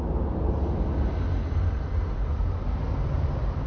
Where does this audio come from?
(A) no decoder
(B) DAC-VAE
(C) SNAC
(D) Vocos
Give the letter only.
A